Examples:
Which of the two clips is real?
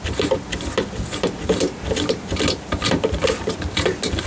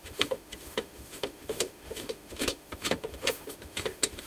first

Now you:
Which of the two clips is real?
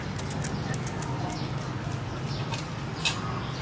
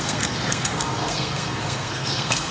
first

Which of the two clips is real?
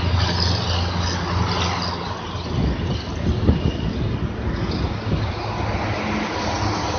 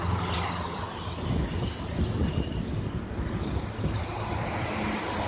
first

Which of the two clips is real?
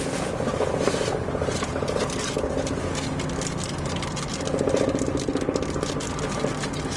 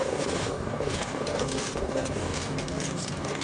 first